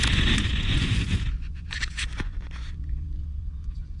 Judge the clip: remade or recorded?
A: remade